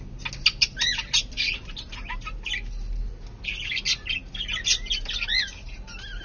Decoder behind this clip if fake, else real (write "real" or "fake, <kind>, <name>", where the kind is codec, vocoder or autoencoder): real